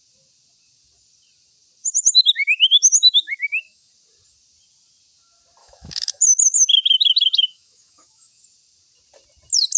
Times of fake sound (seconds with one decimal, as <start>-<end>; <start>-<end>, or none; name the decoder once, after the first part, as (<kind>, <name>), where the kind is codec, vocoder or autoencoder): 1.8-3.9 (autoencoder, DAC-VAE); 5.6-8.4